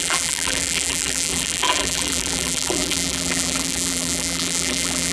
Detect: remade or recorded remade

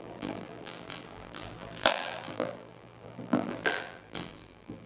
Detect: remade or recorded remade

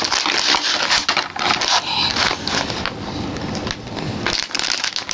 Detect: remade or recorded recorded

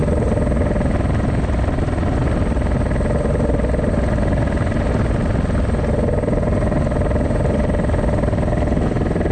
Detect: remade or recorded recorded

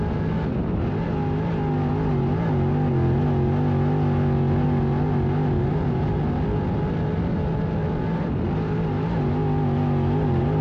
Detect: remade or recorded recorded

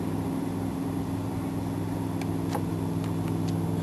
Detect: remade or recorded recorded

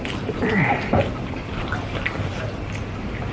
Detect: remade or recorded recorded